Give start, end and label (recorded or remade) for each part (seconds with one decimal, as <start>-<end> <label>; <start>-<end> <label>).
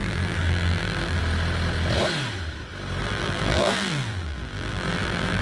0.0-1.2 remade; 1.2-3.0 recorded; 3.0-5.4 remade